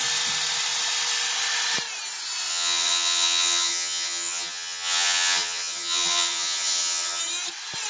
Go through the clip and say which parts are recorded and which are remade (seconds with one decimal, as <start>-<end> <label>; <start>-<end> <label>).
0.0-2.5 recorded; 2.5-7.2 remade; 7.2-7.9 recorded